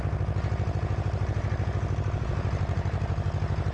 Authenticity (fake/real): real